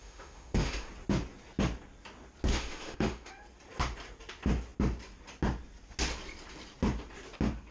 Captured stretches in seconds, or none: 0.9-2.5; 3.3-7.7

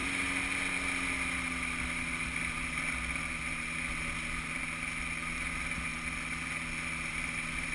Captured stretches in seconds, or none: 0.0-7.7